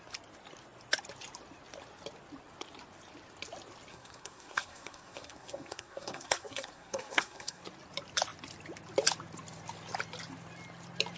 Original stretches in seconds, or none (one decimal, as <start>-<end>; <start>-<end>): 0.0-3.9; 7.6-11.2